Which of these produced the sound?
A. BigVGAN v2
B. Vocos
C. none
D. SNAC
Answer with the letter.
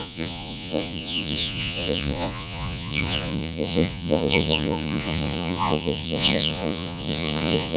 B